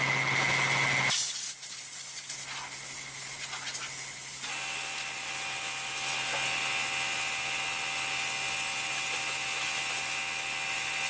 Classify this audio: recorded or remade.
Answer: recorded